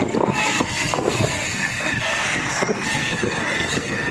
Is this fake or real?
fake